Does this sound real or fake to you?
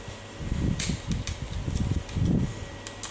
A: real